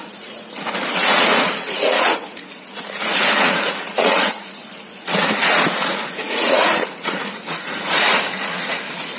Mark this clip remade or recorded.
remade